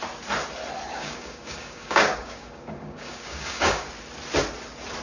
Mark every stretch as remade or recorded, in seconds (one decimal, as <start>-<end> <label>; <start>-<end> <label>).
0.0-0.9 recorded; 0.9-3.9 remade; 3.9-5.0 recorded